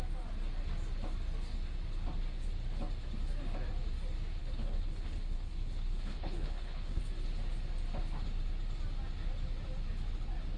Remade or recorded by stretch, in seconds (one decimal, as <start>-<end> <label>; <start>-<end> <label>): 0.0-4.4 recorded; 4.4-7.0 remade; 7.0-10.6 recorded

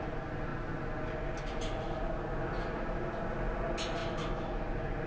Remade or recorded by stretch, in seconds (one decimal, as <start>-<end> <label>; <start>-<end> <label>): 0.0-5.1 recorded

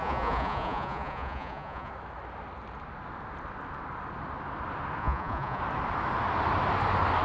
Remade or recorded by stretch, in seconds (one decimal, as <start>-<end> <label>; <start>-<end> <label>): 0.0-1.9 remade; 1.9-5.0 recorded; 5.0-5.6 remade; 5.6-7.2 recorded

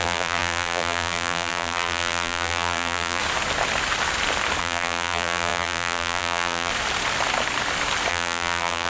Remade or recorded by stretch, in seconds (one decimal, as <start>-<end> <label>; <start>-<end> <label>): 0.0-3.2 remade; 3.2-4.6 recorded; 4.6-6.7 remade; 6.7-8.1 recorded; 8.1-8.9 remade